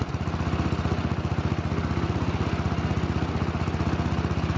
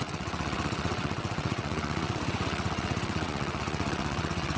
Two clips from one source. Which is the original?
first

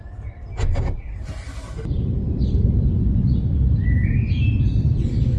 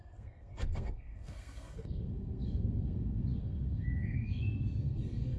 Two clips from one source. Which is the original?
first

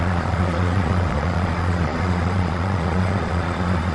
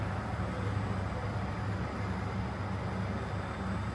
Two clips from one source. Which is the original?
second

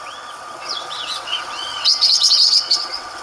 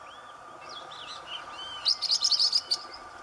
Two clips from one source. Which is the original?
second